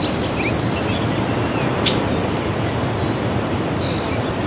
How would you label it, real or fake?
real